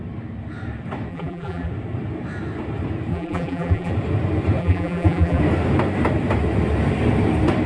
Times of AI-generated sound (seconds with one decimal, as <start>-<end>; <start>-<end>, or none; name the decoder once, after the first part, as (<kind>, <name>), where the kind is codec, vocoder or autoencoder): 1.1-1.7 (vocoder, BigVGAN v2); 3.1-3.9; 4.6-5.4